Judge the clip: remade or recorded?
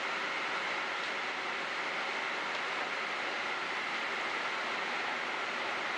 recorded